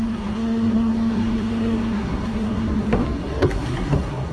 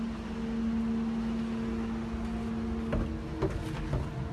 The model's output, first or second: first